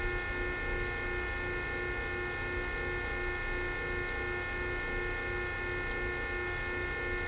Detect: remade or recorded recorded